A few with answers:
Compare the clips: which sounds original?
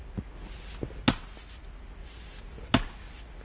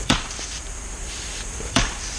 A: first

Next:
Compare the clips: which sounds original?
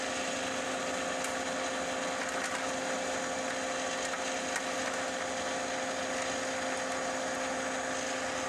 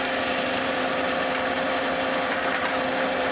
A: first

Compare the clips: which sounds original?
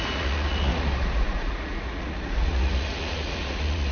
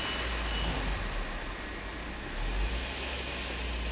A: second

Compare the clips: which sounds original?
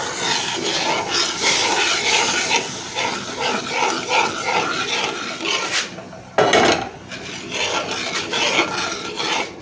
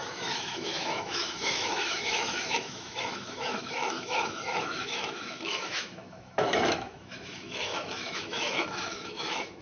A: first